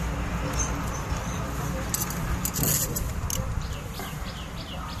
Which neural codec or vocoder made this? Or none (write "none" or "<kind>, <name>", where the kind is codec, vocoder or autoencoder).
none